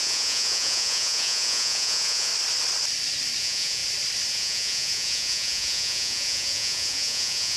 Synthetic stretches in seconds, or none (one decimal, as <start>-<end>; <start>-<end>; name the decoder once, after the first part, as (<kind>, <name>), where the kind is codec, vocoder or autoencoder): 0.0-2.3 (vocoder, Vocos); 3.4-3.8; 4.3-7.6